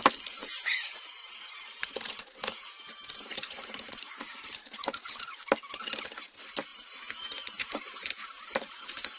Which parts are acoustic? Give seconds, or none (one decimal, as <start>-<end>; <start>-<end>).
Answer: 0.0-0.4; 5.3-6.7; 8.1-9.2